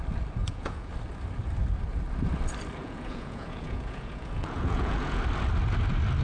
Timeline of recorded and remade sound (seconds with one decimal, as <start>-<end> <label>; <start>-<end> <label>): 0.0-0.4 recorded; 0.4-0.9 remade; 0.9-2.8 recorded; 2.8-5.2 remade; 5.2-6.2 recorded